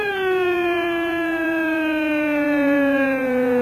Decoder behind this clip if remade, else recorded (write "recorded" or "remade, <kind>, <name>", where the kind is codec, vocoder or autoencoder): remade, vocoder, Vocos